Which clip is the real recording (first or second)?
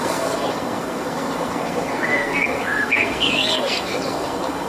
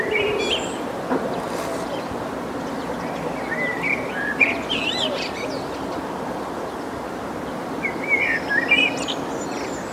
second